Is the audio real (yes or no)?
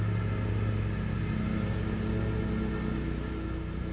yes